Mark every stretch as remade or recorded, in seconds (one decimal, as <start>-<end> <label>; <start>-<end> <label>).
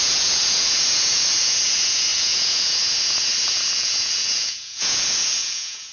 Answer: 0.0-5.9 remade